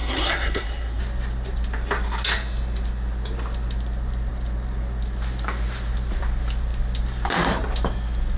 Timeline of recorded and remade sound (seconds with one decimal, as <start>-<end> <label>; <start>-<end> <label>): 0.0-1.0 remade; 1.0-8.4 recorded